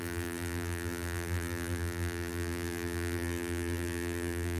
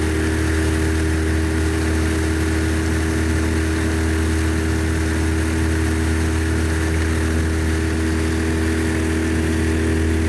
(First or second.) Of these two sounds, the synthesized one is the first